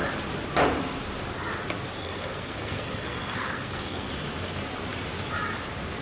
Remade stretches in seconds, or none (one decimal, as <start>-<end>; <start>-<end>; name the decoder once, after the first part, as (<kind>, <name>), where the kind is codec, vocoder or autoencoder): 2.0-4.1 (codec, SNAC)